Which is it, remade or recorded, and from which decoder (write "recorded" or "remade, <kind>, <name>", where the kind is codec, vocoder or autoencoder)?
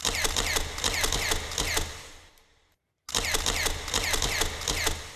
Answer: recorded